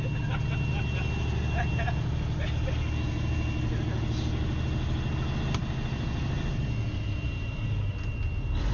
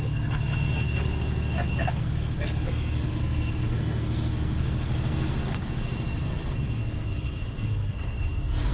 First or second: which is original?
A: first